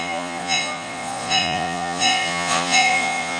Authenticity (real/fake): fake